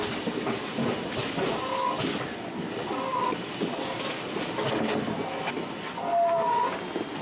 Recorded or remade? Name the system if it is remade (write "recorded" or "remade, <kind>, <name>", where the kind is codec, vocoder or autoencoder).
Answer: recorded